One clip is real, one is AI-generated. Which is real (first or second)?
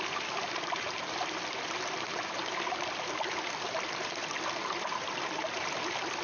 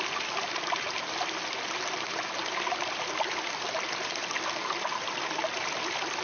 second